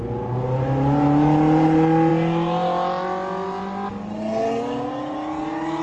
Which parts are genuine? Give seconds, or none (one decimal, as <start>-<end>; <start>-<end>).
0.0-5.8